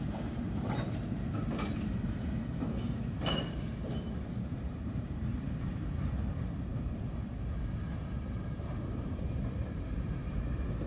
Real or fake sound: fake